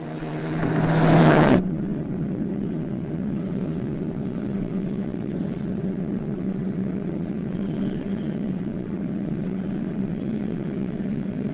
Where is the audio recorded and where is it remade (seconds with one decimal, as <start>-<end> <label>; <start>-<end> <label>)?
0.0-0.6 remade; 0.6-1.2 recorded; 1.2-11.5 remade